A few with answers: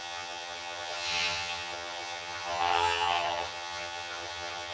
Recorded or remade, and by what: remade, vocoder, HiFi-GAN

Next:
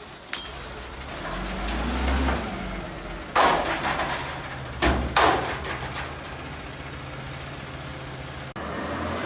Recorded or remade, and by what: recorded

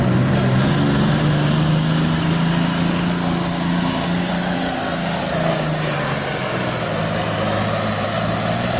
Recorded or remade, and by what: recorded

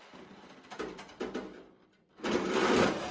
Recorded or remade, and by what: recorded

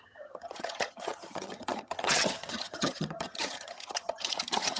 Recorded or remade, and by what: remade, vocoder, HiFi-GAN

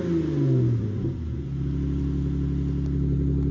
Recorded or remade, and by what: recorded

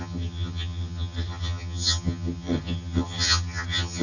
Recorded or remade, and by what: remade, vocoder, HiFi-GAN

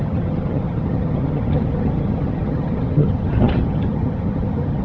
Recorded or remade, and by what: remade, vocoder, HiFi-GAN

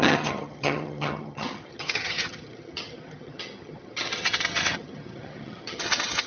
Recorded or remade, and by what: remade, vocoder, HiFi-GAN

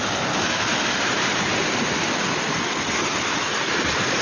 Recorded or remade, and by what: recorded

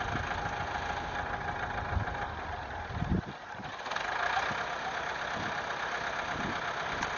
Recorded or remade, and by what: recorded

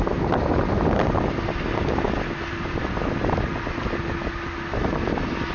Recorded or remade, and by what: recorded